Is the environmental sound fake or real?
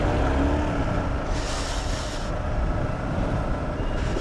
real